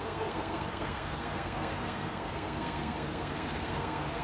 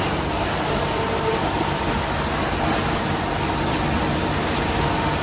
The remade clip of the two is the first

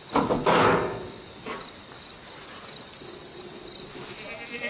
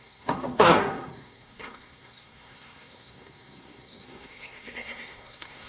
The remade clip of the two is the second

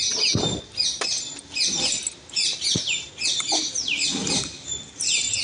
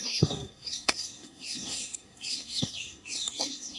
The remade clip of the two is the second